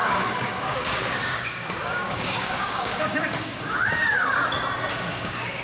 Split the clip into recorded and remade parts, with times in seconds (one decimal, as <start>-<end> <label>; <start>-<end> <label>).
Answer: 0.0-4.4 remade; 4.4-5.1 recorded; 5.1-5.6 remade